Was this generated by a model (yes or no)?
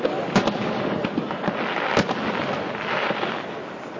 no